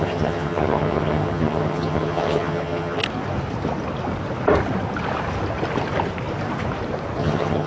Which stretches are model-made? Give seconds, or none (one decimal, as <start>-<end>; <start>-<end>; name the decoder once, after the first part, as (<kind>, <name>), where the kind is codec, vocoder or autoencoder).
0.0-3.0 (vocoder, HiFi-GAN); 7.2-7.7